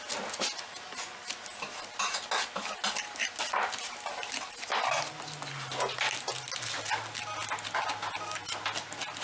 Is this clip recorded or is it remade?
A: recorded